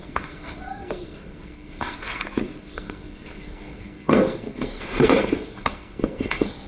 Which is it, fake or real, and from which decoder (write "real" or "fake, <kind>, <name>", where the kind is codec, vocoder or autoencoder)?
fake, codec, SNAC